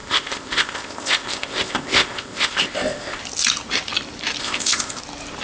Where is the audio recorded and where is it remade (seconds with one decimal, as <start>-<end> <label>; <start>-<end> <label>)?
0.0-3.2 remade; 3.2-4.4 recorded; 4.4-5.0 remade; 5.0-5.4 recorded